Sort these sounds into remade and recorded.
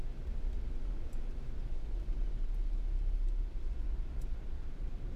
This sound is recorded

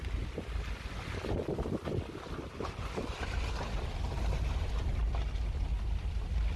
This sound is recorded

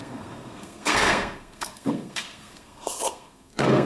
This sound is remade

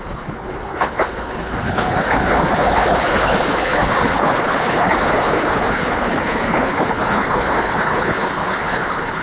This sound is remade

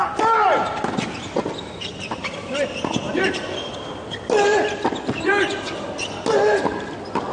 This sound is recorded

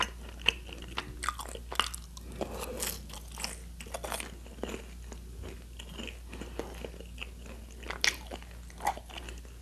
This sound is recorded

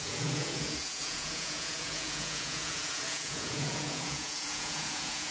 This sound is remade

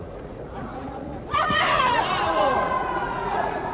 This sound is remade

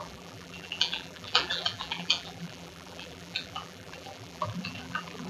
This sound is remade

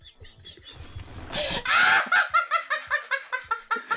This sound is recorded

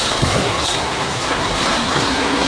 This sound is remade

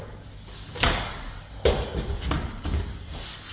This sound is remade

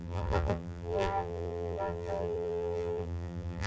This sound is remade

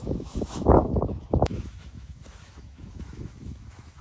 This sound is remade